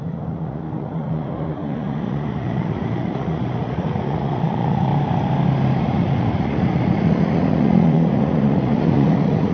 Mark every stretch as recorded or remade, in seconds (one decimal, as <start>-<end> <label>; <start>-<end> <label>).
0.0-4.9 remade; 4.9-5.8 recorded; 5.8-9.5 remade